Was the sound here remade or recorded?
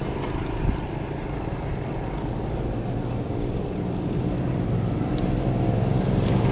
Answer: recorded